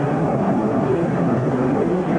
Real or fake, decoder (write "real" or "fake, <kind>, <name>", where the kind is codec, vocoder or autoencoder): fake, codec, SNAC